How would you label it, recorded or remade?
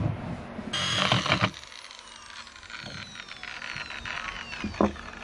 recorded